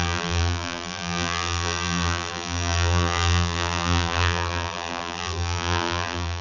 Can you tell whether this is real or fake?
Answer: fake